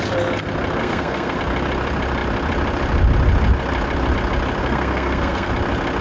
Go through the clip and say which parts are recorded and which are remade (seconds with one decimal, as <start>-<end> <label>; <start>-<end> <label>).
0.0-0.8 recorded; 0.8-1.4 remade; 1.4-4.6 recorded; 4.6-5.5 remade; 5.5-6.0 recorded